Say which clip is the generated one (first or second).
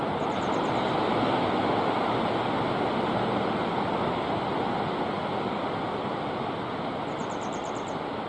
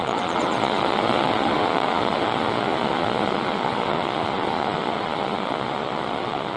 second